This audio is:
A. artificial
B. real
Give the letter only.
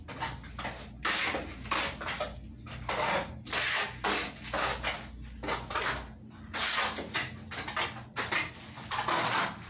B